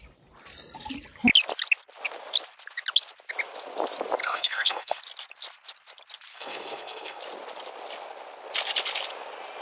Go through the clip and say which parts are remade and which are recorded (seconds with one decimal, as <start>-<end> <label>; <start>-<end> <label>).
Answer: 0.0-4.2 recorded; 4.2-5.0 remade; 5.0-6.3 recorded; 6.3-7.2 remade; 7.2-9.6 recorded